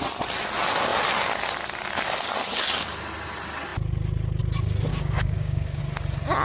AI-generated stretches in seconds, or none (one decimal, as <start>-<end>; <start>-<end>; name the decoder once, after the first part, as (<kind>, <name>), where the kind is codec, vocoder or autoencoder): 4.9-5.8 (codec, DAC)